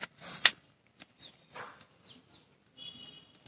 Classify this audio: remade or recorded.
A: recorded